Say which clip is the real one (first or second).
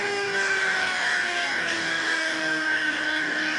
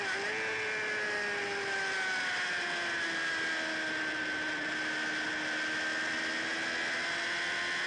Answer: second